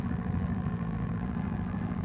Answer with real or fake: fake